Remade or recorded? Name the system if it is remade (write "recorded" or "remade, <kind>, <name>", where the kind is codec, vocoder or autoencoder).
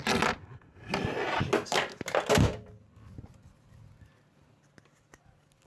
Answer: recorded